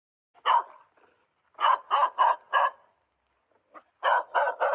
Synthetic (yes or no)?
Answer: no